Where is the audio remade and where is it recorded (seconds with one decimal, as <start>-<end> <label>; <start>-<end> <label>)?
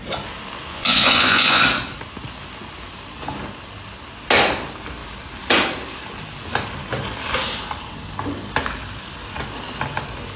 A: 0.0-0.7 recorded; 0.7-1.6 remade; 1.6-10.4 recorded